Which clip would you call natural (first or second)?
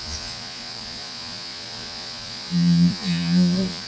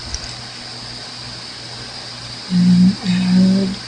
second